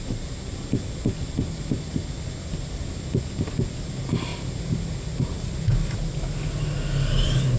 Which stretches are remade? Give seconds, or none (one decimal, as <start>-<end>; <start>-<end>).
none